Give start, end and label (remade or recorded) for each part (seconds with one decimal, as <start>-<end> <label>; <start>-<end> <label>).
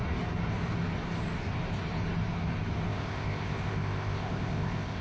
0.0-2.9 recorded; 2.9-5.0 remade